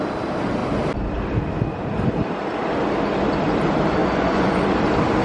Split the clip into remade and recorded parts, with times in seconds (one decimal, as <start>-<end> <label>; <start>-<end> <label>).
0.0-4.0 recorded; 4.0-4.6 remade; 4.6-5.2 recorded